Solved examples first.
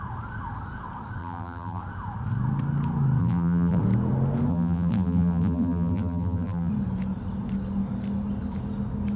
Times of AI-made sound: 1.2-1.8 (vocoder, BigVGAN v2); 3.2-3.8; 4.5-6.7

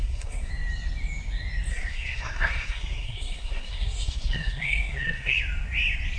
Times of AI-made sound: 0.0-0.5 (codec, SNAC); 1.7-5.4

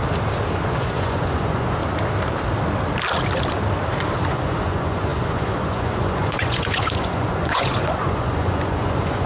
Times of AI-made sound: 0.7-1.8 (vocoder, Vocos); 4.2-9.3